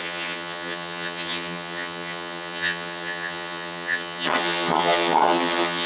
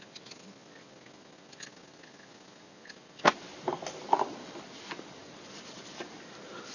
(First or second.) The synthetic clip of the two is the first